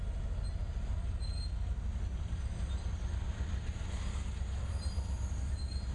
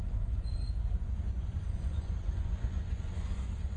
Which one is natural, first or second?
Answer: first